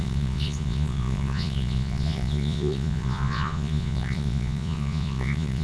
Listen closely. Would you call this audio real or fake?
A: fake